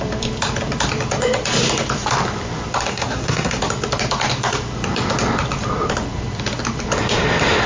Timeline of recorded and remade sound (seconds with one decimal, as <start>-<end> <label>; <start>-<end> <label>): 0.0-2.9 recorded; 2.9-3.6 remade; 3.6-7.7 recorded